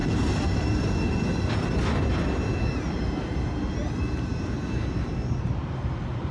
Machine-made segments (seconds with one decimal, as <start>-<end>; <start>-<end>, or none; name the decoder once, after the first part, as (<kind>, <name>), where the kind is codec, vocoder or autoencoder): none